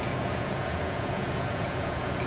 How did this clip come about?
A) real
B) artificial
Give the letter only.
B